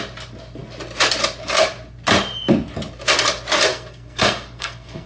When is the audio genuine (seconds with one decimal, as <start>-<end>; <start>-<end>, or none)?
0.0-3.7